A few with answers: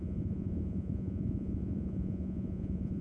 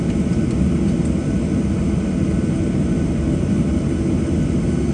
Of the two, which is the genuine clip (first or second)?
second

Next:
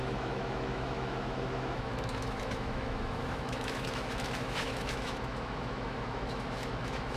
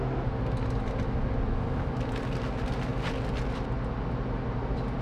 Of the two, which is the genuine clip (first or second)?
second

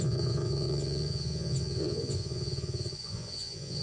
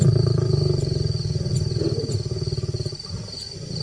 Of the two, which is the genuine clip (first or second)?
second